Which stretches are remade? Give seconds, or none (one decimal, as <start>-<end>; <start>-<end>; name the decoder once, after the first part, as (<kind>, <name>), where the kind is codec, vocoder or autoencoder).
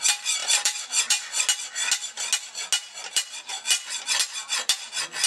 0.4-1.2 (vocoder, BigVGAN v2)